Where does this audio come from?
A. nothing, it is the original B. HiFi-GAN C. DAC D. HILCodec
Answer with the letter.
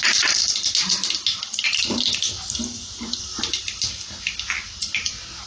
A